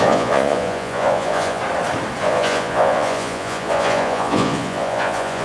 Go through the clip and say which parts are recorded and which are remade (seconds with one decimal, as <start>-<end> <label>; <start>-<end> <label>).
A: 0.0-1.6 remade; 1.6-2.2 recorded; 2.2-5.4 remade